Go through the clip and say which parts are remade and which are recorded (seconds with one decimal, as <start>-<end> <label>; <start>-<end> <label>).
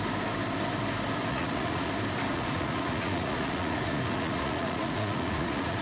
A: 0.0-1.3 recorded; 1.3-1.9 remade; 1.9-2.3 recorded; 2.3-5.8 remade